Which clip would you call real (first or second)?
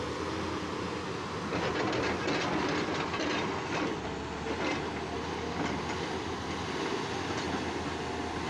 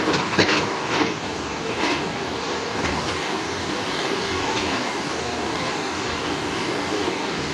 first